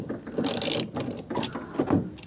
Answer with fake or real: real